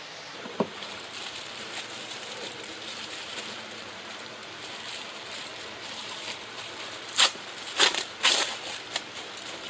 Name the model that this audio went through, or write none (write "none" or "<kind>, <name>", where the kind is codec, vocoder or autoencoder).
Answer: vocoder, BigVGAN v2